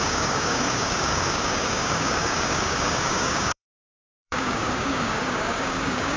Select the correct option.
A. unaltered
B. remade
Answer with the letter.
B